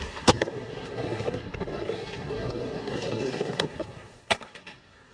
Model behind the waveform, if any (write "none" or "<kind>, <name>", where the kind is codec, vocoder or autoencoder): codec, SNAC